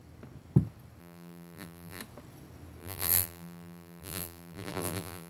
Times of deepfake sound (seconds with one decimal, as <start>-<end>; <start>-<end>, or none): 1.0-2.0; 2.8-5.3